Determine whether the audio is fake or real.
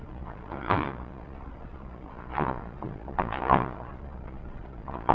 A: fake